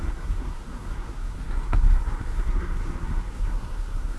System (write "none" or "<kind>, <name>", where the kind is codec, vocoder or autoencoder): codec, SNAC